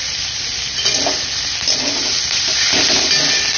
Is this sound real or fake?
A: real